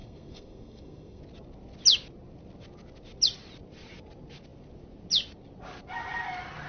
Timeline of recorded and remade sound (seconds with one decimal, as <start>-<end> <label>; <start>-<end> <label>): 0.0-1.2 remade; 1.2-6.7 recorded